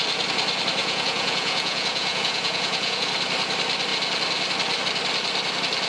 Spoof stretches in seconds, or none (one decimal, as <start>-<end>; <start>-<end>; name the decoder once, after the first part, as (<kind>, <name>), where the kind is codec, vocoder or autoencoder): 0.8-3.1 (vocoder, Vocos)